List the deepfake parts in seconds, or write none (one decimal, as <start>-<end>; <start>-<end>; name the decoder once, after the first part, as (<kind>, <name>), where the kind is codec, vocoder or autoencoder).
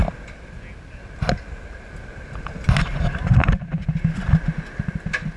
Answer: none